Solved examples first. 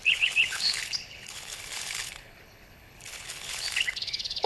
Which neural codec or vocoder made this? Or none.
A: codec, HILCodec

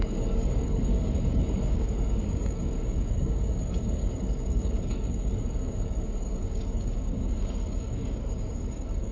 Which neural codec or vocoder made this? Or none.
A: codec, DAC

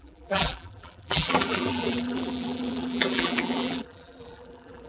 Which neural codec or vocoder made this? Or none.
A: vocoder, BigVGAN v2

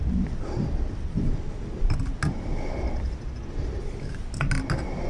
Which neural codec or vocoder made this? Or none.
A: none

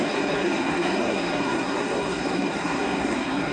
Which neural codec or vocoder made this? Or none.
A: codec, SNAC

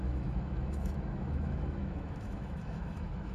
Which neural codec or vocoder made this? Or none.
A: autoencoder, DAC-VAE